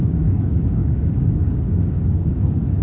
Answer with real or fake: fake